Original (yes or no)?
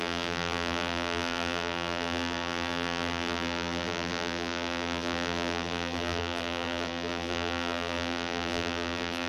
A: no